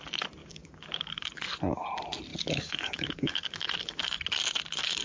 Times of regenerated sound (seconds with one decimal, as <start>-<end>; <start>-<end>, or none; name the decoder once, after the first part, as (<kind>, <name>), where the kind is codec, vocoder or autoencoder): 0.4-1.3 (codec, DAC); 2.3-4.0